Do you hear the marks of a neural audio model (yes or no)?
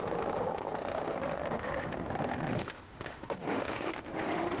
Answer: yes